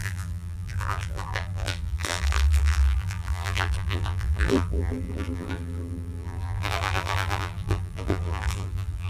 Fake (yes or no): yes